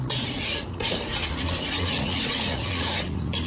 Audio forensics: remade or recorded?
remade